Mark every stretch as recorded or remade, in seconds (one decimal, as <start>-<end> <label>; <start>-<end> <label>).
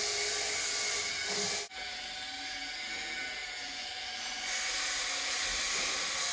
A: 0.0-3.8 recorded; 3.8-4.6 remade; 4.6-6.3 recorded